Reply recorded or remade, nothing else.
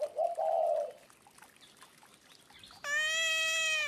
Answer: recorded